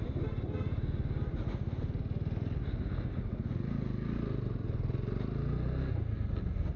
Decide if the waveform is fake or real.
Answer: real